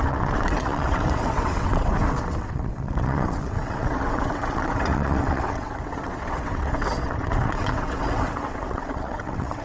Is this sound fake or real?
fake